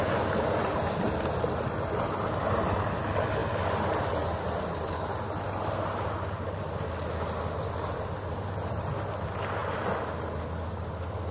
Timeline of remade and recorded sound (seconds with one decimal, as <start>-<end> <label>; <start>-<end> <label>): 0.0-11.3 recorded